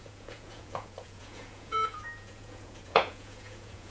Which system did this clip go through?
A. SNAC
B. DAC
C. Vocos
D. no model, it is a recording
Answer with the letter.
C